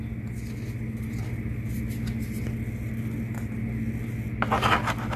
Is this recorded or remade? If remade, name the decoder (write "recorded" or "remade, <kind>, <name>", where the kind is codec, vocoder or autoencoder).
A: recorded